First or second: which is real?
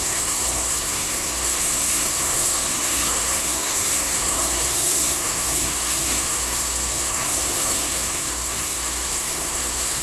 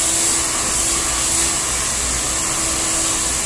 second